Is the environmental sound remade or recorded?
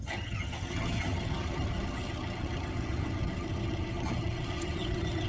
remade